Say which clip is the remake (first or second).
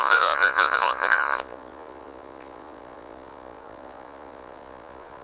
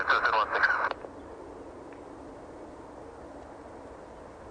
first